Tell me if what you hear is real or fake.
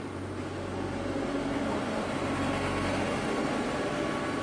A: real